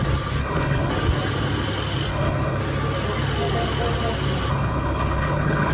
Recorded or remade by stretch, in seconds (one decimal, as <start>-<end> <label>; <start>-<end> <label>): 0.0-0.4 recorded; 0.4-0.9 remade; 0.9-2.1 recorded; 2.1-2.6 remade; 2.6-4.5 recorded; 4.5-5.7 remade